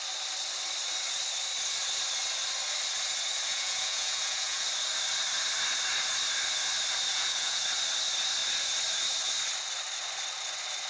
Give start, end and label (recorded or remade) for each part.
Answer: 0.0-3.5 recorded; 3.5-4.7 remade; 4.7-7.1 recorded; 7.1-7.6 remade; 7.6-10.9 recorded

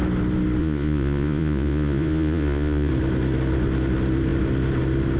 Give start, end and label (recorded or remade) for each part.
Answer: 0.0-0.6 recorded; 0.6-2.9 remade; 2.9-5.2 recorded